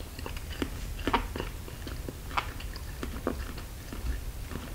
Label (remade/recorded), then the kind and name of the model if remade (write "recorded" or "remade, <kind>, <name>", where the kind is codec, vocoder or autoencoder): recorded